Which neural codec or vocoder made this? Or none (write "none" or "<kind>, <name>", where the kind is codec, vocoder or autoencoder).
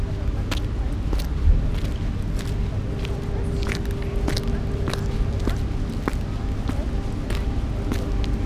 none